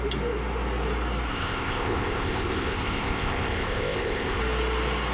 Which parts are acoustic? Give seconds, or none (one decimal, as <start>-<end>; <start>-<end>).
0.0-1.3; 4.4-5.1